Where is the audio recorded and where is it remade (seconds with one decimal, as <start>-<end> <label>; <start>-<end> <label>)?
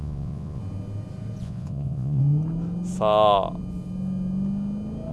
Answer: 0.0-0.6 remade; 0.6-1.4 recorded; 1.4-2.2 remade; 2.2-5.1 recorded